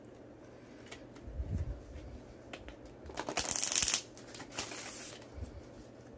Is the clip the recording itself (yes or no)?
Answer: yes